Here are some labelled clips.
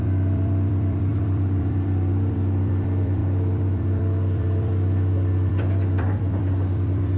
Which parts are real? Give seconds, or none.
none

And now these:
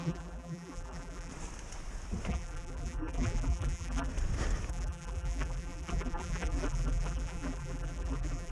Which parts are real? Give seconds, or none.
1.3-2.3; 4.1-4.7

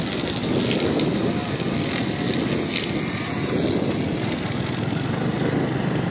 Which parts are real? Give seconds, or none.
0.0-6.1

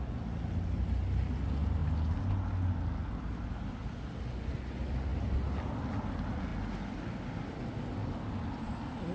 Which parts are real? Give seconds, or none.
0.0-9.1

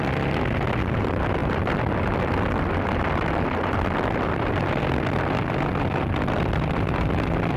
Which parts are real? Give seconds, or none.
none

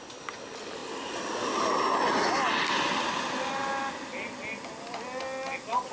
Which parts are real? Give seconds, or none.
0.0-5.9